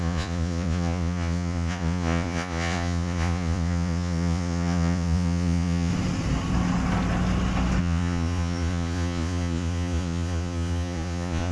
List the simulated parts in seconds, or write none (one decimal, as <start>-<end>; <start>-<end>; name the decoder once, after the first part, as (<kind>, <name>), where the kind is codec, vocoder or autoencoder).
0.0-5.9 (vocoder, Vocos); 7.8-11.5

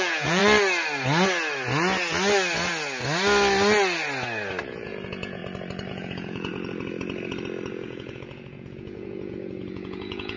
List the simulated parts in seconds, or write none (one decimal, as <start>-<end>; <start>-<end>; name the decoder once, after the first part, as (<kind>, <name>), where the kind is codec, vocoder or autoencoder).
0.0-0.4 (vocoder, Vocos); 4.7-5.4; 5.9-6.5; 7.7-10.4

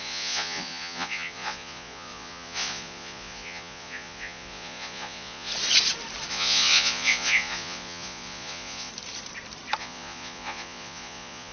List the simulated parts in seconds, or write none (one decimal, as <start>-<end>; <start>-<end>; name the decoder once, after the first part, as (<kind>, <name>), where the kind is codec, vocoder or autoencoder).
0.0-5.5 (vocoder, Vocos); 6.3-8.9; 9.8-11.5

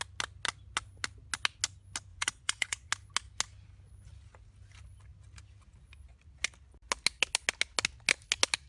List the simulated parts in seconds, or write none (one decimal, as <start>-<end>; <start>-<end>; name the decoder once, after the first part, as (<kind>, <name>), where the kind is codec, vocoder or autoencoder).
2.1-2.9 (vocoder, Vocos)

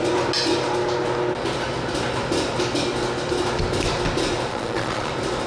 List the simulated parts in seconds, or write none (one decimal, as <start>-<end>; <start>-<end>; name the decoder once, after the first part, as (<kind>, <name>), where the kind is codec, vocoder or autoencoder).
4.5-5.1 (vocoder, Vocos)

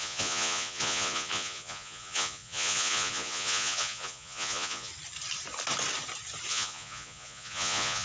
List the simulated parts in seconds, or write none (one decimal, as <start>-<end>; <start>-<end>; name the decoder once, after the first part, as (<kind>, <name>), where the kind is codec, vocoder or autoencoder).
0.0-4.9 (vocoder, Vocos); 6.5-8.0